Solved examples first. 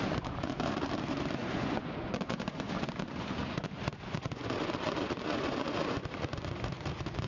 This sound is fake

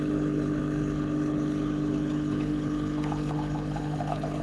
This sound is fake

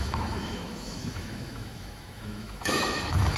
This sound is fake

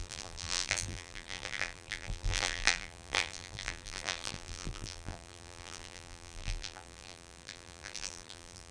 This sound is fake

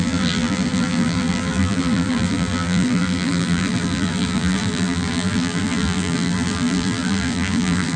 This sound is fake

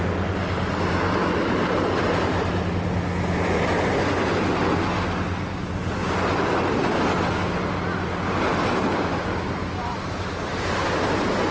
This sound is real